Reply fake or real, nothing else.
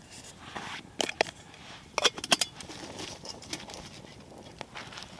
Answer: real